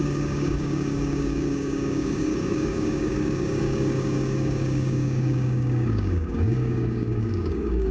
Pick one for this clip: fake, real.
fake